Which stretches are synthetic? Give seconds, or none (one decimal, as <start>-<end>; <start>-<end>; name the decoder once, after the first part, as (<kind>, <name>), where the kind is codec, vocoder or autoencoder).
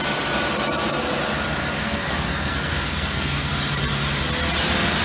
1.8-3.5 (codec, SNAC)